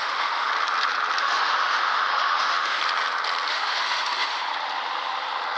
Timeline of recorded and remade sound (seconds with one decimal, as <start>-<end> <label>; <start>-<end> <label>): 0.0-0.5 remade; 0.5-1.2 recorded; 1.2-2.8 remade; 2.8-3.5 recorded; 3.5-4.5 remade; 4.5-5.6 recorded